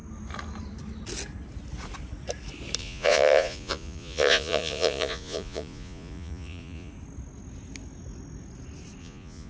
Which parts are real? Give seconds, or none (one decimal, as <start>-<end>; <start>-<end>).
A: 0.0-2.8; 6.9-9.0